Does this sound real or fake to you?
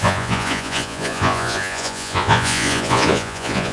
fake